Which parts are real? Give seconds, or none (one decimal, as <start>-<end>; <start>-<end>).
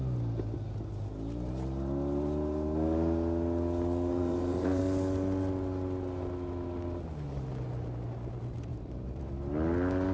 0.0-4.1; 4.8-8.7; 9.2-10.1